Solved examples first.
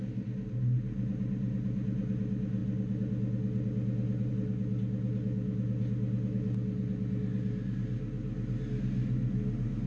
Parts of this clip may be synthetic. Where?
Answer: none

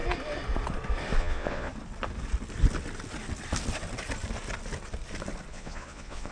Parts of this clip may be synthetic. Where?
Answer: 1.2-1.7; 5.5-6.3

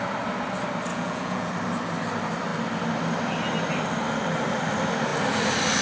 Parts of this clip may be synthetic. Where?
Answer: 0.9-1.5

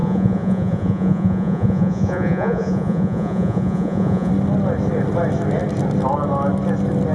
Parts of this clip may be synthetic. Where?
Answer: 0.0-4.3